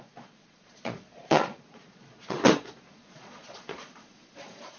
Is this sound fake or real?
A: fake